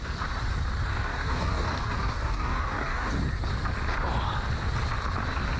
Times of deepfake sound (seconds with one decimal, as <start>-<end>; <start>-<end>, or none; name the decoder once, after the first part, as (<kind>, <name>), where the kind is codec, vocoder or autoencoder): 0.9-3.1 (codec, DAC)